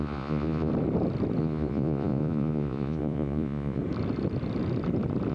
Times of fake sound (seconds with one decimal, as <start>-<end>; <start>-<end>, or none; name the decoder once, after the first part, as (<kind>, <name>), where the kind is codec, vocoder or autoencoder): 0.0-0.7 (vocoder, Vocos); 1.4-3.8